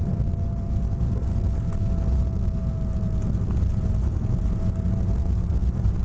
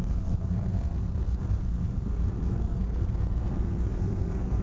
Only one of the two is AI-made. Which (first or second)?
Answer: second